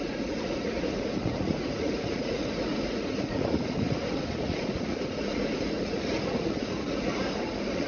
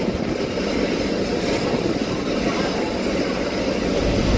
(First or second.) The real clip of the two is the second